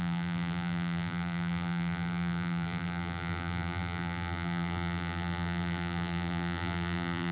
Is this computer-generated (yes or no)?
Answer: yes